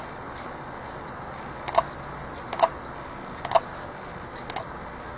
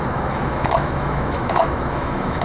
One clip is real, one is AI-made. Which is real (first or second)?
first